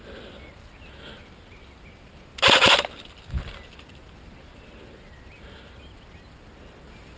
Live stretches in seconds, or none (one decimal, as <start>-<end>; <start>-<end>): 0.0-7.2